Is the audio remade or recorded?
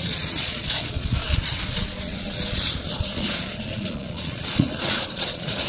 remade